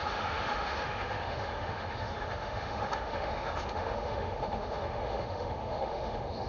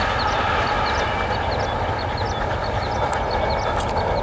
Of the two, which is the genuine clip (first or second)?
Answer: second